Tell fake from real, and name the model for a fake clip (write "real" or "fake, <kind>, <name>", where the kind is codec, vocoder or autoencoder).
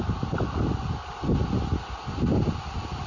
real